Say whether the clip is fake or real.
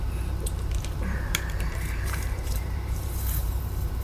fake